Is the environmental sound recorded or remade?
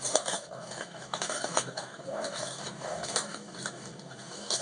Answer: remade